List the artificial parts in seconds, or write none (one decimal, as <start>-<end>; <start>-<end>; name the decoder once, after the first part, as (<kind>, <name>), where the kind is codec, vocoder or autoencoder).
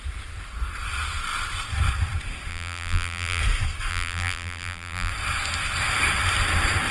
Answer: 2.5-3.4 (vocoder, BigVGAN v2); 3.9-5.1